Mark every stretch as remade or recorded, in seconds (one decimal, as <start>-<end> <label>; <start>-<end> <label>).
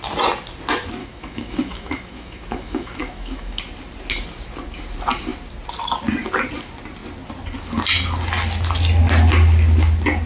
0.0-1.0 recorded; 1.0-3.6 remade; 3.6-10.3 recorded